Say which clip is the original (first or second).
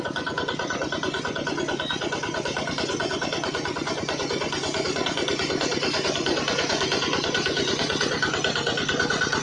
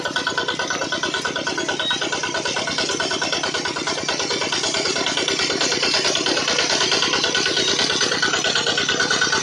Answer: second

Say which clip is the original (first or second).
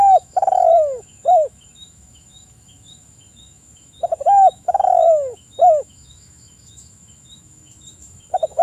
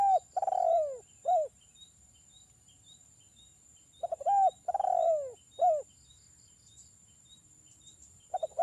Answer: second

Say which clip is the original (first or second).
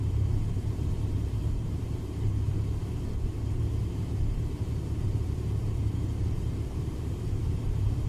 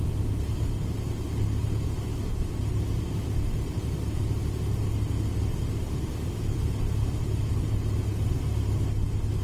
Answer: second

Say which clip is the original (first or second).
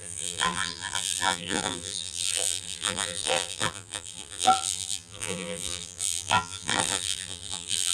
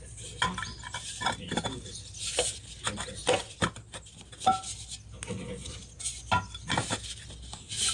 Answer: second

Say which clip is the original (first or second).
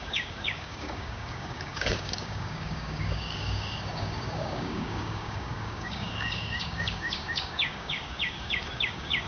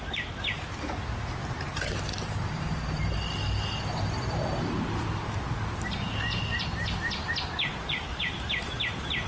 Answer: second